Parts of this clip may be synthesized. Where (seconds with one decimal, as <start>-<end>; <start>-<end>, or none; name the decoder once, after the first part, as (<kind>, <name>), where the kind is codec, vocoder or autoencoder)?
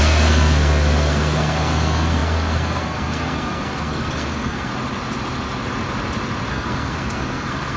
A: 0.0-4.7 (codec, SNAC); 6.5-7.8